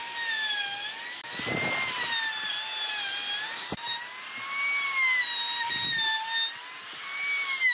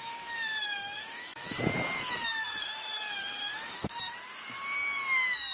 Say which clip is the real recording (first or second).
first